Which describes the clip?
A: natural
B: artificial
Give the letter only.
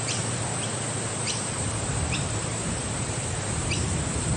B